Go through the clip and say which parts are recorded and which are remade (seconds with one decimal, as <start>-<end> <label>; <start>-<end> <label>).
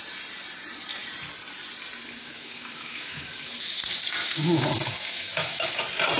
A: 0.0-2.2 recorded; 2.2-3.8 remade; 3.8-4.2 recorded; 4.2-5.8 remade; 5.8-6.2 recorded